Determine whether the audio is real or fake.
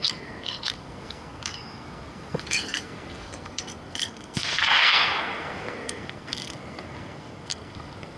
fake